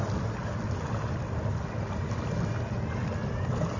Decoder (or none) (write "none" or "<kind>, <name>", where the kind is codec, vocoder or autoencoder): none